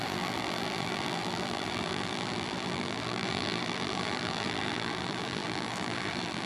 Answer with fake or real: fake